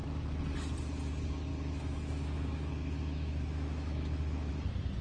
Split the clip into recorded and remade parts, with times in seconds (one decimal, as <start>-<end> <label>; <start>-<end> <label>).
0.0-1.5 recorded; 1.5-4.5 remade; 4.5-5.0 recorded